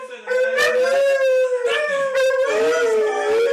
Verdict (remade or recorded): recorded